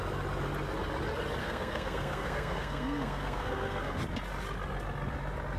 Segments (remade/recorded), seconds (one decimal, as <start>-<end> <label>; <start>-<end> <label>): 0.0-1.4 recorded; 1.4-4.0 remade; 4.0-5.6 recorded